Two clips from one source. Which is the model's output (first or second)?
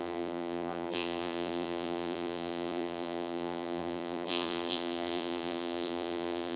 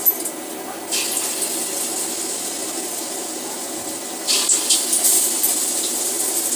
first